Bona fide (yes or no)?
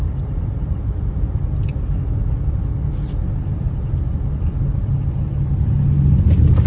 yes